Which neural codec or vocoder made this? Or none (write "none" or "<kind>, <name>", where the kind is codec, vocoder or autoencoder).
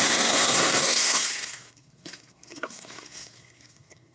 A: codec, SNAC